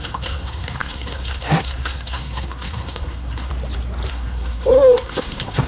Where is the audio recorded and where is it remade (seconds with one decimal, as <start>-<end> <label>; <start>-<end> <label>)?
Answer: 0.0-3.5 remade; 3.5-4.1 recorded; 4.1-5.7 remade